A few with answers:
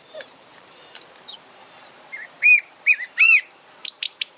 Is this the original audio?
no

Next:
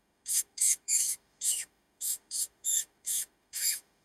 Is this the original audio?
no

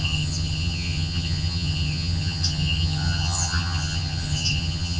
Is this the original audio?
no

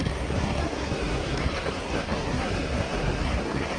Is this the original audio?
no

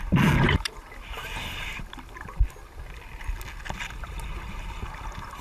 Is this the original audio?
yes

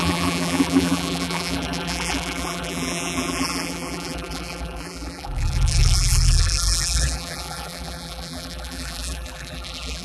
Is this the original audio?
no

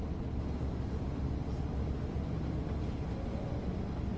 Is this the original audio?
yes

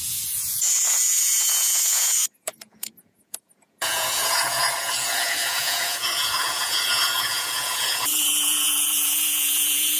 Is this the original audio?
no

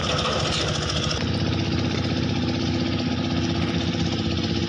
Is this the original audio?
yes